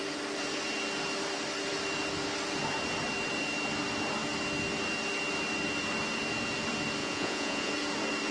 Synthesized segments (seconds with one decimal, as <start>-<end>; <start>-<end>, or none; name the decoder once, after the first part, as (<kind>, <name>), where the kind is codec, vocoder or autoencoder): 7.0-7.7 (vocoder, Vocos)